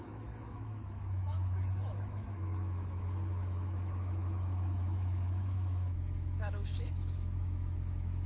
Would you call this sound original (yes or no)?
no